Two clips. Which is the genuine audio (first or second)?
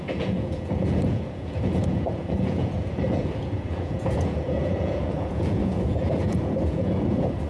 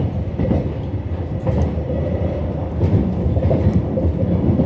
second